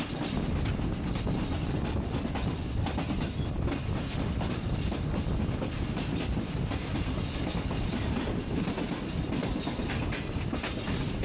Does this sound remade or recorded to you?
recorded